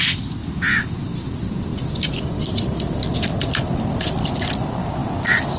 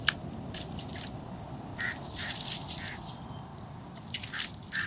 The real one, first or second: first